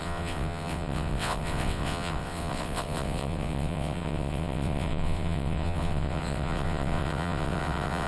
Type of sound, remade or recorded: remade